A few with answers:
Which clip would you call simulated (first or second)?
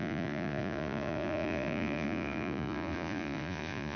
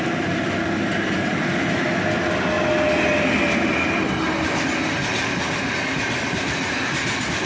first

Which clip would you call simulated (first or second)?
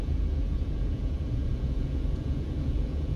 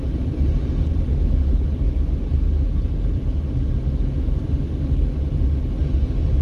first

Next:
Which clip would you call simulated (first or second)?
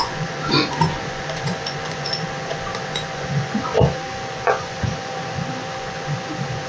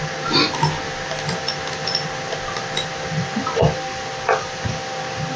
first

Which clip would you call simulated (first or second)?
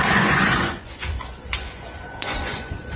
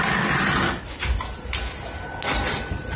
first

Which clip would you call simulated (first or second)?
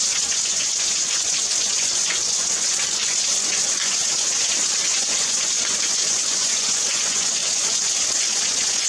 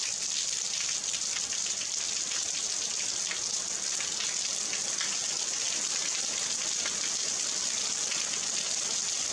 first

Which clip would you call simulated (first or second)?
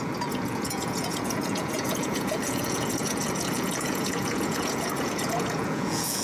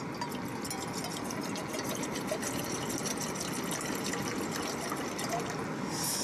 first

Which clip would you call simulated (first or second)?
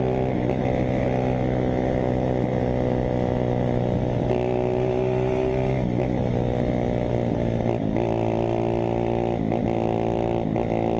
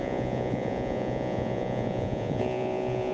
second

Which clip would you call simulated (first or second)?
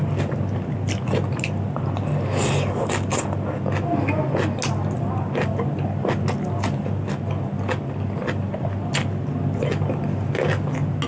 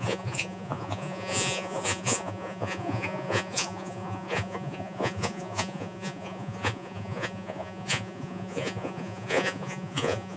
second